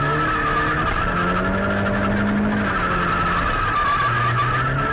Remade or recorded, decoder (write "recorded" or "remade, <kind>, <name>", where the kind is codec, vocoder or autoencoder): recorded